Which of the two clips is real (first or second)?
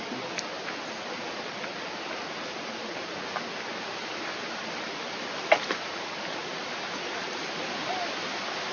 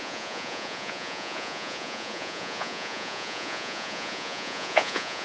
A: first